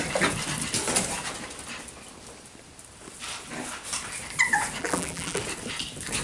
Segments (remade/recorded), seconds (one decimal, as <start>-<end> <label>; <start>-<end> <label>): 0.0-4.8 recorded; 4.8-5.4 remade; 5.4-6.2 recorded